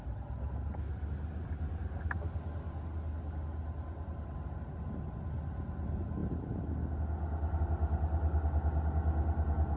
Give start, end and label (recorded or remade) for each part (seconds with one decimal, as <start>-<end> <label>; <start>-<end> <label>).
0.0-9.8 recorded